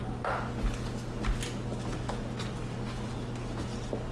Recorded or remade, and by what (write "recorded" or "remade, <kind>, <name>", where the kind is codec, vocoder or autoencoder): recorded